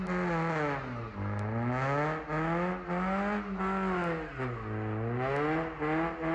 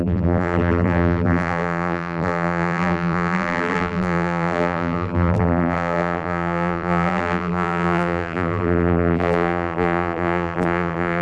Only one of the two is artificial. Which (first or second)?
second